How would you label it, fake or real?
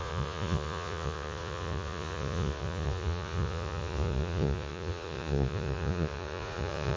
fake